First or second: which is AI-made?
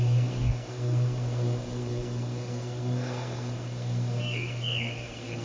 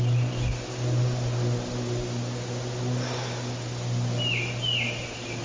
first